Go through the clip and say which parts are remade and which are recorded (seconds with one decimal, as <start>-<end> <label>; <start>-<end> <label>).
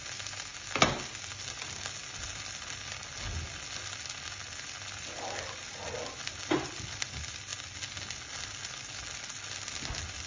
0.0-10.3 recorded